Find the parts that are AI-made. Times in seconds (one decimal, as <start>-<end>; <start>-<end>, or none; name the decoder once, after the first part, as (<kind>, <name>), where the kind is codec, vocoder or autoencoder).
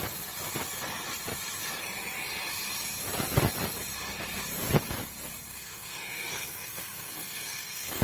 5.5-8.0 (codec, SNAC)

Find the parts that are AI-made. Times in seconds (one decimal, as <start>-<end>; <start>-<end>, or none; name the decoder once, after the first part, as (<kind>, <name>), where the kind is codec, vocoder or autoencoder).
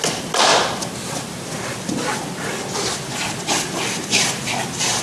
none